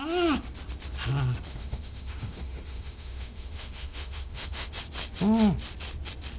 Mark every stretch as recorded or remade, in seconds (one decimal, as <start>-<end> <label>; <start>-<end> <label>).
0.0-1.5 recorded; 1.5-4.7 remade; 4.7-6.4 recorded